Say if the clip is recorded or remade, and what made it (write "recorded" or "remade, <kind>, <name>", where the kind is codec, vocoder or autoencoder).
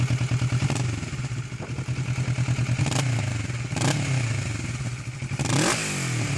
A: recorded